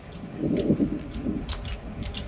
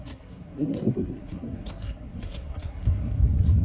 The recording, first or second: first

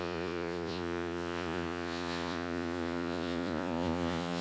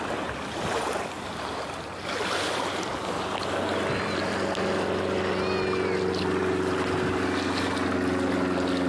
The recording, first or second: second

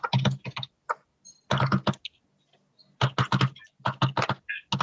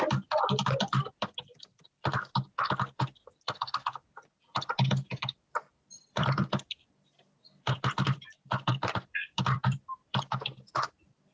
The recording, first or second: first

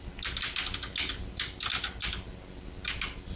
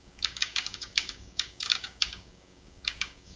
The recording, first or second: first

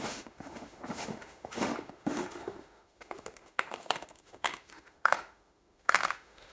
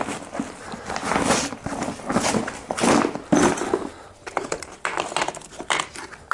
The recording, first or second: second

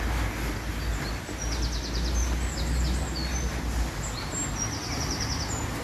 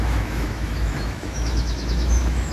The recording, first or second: first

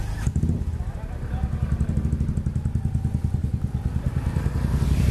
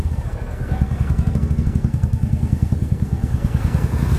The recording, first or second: first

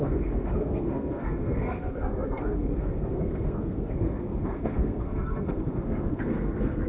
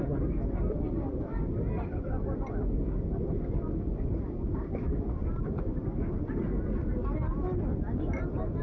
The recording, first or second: second